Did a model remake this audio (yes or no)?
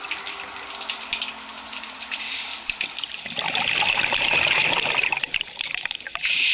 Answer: no